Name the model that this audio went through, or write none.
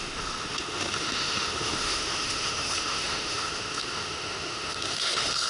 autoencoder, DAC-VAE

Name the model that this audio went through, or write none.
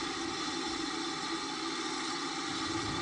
none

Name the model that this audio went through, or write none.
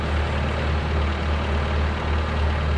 none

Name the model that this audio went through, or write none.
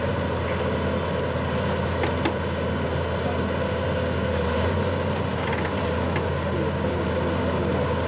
none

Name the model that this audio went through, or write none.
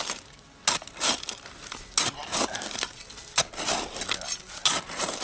none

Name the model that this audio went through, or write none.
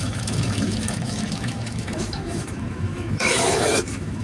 autoencoder, DAC-VAE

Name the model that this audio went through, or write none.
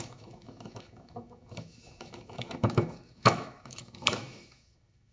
autoencoder, DAC-VAE